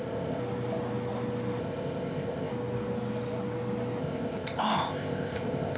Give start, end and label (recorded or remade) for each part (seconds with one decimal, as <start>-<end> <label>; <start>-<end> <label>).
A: 0.0-0.4 remade; 0.4-1.6 recorded; 1.6-2.5 remade; 2.5-4.0 recorded; 4.0-5.8 remade